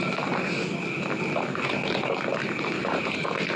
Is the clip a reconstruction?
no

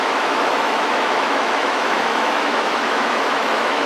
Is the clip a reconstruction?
yes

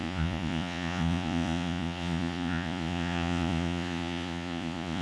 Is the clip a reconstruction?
yes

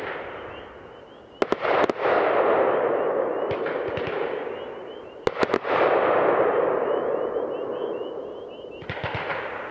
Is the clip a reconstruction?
no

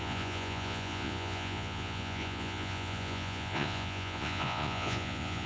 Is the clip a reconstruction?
yes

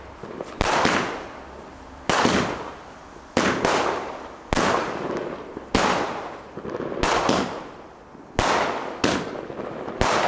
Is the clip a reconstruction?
no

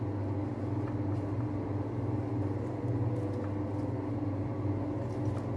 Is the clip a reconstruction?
no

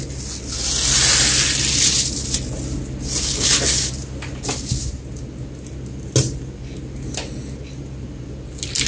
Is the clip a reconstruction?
no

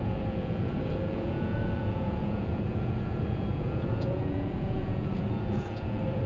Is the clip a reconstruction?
yes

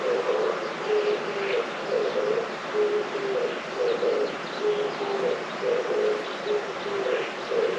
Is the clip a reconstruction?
no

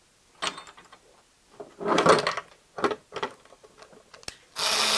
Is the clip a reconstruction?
no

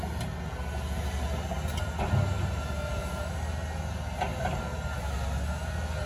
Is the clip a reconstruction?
no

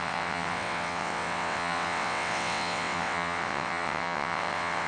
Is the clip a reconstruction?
yes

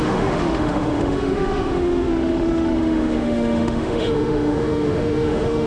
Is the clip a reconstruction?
yes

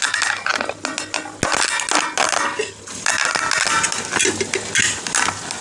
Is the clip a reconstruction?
no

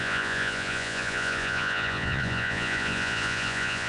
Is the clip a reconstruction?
yes